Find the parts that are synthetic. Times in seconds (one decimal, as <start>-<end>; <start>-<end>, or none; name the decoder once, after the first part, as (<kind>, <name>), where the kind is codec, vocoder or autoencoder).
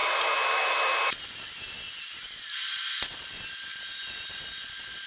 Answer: none